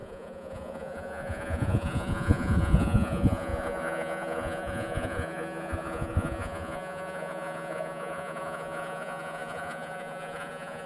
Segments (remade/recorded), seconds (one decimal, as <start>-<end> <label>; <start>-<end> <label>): 0.0-10.9 remade